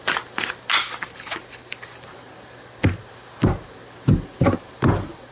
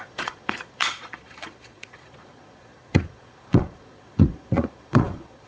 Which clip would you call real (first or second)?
first